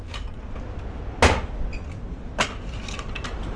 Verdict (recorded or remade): recorded